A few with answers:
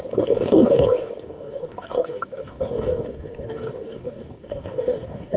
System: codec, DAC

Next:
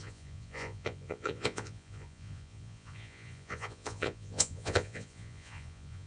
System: vocoder, Vocos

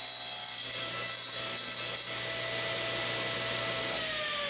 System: none